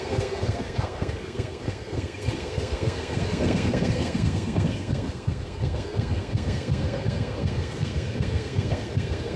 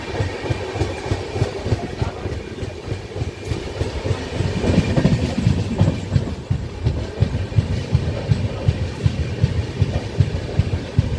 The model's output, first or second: first